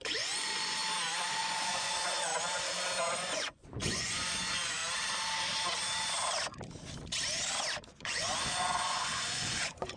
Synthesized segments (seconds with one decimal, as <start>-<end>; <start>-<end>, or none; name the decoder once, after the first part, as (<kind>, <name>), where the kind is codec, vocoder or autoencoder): 0.0-0.8 (vocoder, Vocos); 1.4-2.3; 3.1-4.8; 7.9-10.0